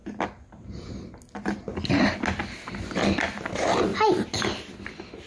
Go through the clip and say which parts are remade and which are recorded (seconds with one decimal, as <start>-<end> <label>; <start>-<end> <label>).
0.0-5.3 recorded